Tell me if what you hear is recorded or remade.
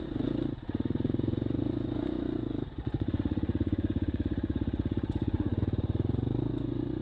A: remade